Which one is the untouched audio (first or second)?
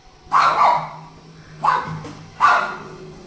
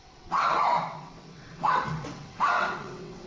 first